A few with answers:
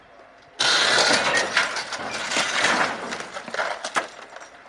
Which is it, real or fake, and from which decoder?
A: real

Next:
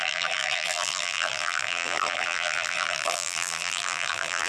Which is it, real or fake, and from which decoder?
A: fake, vocoder, BigVGAN v2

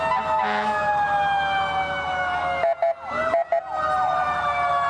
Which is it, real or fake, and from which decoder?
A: real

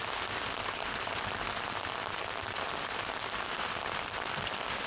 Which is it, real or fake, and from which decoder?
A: real